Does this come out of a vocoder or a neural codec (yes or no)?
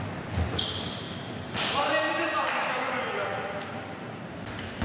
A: no